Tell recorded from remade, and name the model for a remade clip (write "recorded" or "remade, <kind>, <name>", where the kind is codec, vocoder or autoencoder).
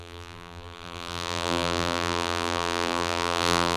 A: remade, vocoder, BigVGAN v2